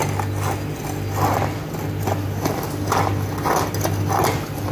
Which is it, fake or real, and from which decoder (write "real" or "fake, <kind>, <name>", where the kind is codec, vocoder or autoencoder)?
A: real